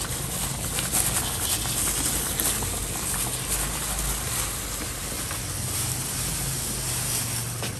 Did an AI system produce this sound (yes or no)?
no